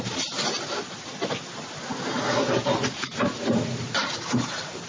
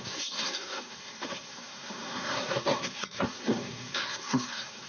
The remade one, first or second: second